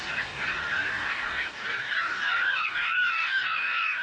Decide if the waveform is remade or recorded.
remade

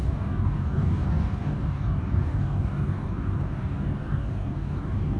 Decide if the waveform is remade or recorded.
remade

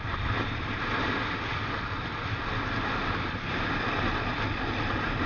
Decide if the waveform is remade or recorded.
recorded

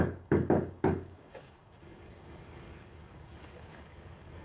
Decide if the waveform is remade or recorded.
remade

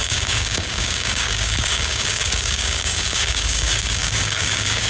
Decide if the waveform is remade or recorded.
remade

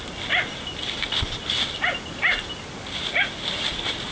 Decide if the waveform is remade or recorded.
recorded